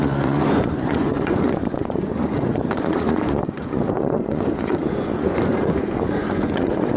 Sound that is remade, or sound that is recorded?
remade